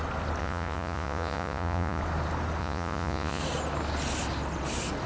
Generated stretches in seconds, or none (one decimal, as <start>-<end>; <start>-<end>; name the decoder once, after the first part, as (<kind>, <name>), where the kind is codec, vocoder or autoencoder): 0.4-2.0 (vocoder, Vocos); 2.6-3.4